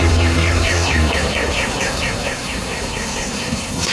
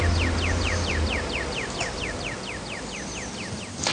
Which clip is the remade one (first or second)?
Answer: first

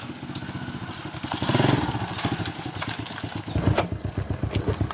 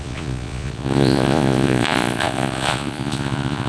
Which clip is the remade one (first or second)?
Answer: second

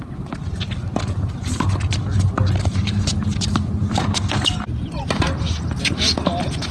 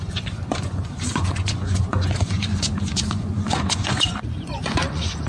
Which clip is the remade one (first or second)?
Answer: second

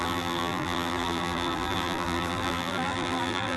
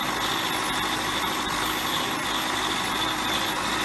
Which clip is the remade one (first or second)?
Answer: first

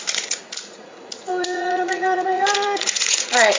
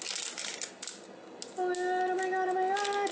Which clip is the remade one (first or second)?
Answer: first